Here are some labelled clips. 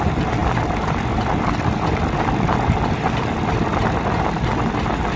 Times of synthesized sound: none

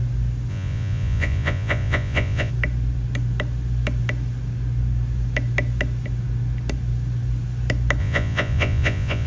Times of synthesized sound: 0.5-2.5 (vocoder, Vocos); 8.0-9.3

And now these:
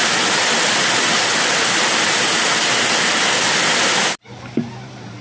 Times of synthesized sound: none